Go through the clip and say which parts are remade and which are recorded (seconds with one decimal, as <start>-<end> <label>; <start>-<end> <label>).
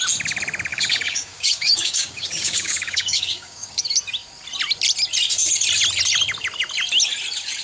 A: 0.0-0.7 recorded; 0.7-3.8 remade; 3.8-7.6 recorded